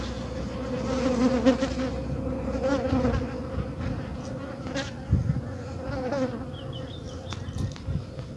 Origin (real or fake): real